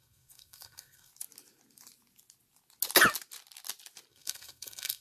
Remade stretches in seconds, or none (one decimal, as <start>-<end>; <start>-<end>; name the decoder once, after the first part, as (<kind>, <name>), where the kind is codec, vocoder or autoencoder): 0.0-1.1 (codec, SNAC); 4.1-5.0